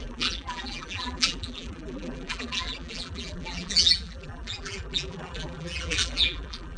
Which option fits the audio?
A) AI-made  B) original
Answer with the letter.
A